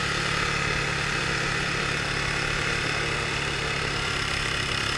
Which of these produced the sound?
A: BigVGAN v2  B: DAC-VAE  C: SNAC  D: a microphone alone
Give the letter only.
A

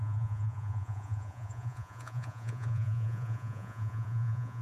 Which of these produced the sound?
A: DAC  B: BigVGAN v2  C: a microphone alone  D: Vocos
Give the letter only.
D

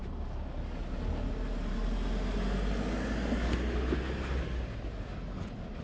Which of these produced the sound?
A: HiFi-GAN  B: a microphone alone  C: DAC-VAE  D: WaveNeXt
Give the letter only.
B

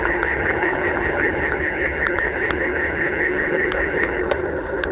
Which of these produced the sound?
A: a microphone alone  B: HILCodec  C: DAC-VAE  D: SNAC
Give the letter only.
B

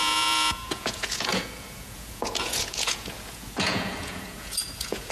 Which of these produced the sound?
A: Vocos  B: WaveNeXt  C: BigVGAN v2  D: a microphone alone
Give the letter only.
A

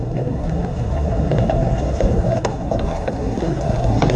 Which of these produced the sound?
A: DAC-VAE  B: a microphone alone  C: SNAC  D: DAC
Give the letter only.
C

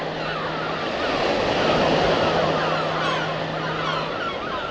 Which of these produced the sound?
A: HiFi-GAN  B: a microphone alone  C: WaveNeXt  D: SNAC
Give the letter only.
B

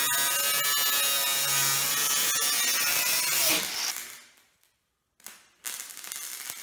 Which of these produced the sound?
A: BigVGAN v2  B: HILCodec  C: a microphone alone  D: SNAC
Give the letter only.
C